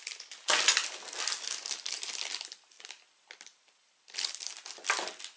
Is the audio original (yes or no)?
yes